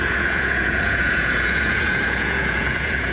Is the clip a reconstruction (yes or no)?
yes